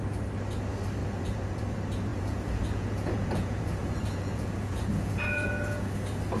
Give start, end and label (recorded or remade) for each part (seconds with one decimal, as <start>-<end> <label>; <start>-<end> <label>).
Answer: 0.0-1.0 recorded; 1.0-1.6 remade; 1.6-2.1 recorded; 2.1-5.9 remade; 5.9-6.4 recorded